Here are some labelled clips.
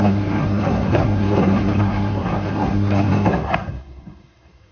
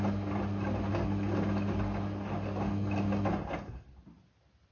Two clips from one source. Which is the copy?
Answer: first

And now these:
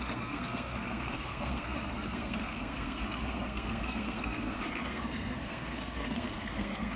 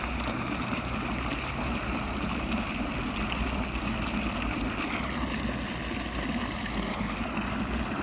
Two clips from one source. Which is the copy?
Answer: first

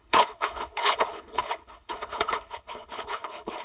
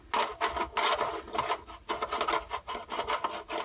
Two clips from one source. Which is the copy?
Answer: first